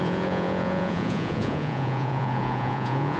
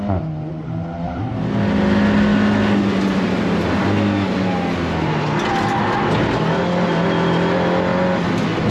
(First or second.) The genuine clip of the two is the second